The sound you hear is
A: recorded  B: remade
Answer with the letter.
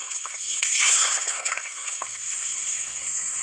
B